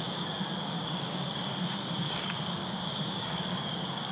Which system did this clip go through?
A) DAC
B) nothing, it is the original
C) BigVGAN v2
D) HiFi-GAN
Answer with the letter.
A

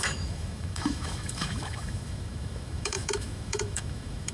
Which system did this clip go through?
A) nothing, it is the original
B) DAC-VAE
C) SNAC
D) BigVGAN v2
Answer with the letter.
B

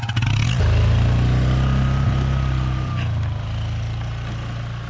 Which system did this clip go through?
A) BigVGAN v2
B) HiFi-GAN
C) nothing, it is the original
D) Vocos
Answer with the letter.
C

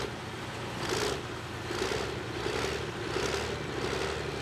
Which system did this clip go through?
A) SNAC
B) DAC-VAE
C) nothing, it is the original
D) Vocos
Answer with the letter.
C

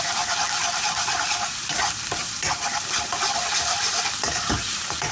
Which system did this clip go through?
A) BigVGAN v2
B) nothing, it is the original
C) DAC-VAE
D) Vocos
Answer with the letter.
A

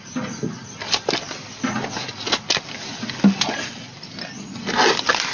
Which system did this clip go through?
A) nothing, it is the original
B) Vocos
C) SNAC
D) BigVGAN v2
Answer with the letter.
A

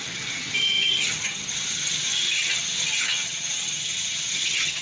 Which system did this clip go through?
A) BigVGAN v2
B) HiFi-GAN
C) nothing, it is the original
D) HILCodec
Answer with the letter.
B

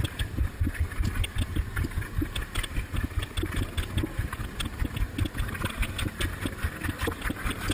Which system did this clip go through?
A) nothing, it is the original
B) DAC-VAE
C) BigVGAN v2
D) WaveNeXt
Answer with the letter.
A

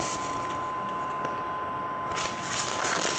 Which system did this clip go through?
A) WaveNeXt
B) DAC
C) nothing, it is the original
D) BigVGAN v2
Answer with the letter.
C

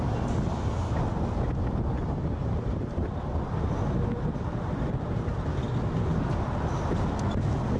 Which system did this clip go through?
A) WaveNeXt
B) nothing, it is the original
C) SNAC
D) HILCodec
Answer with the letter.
B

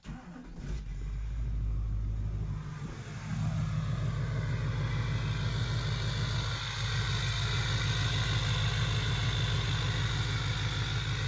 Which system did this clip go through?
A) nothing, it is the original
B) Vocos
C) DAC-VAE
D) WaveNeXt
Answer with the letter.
A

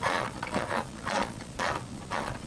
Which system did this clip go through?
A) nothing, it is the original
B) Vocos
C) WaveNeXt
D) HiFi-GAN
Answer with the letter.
B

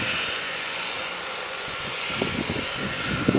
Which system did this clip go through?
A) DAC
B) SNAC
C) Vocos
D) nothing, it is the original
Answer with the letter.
C